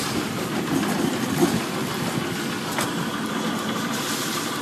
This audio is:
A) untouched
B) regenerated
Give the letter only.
A